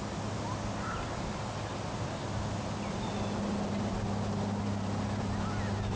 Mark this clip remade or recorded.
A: recorded